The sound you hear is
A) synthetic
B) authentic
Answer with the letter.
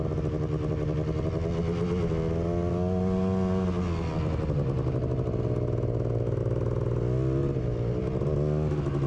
B